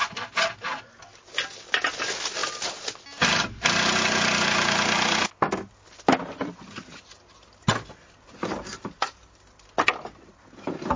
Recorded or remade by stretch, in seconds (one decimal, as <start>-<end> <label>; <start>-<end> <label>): 0.0-11.0 recorded